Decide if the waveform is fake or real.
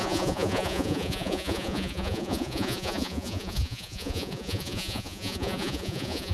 fake